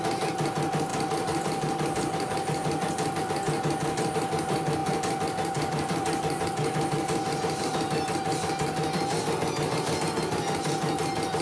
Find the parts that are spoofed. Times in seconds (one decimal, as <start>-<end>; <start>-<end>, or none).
none